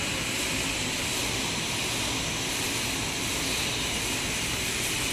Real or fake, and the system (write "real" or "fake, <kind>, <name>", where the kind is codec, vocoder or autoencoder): fake, vocoder, BigVGAN v2